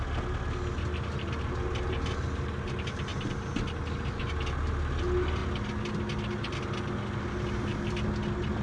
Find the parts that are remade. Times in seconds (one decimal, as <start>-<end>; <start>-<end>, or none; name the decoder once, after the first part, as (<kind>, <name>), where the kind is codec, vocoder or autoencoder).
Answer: none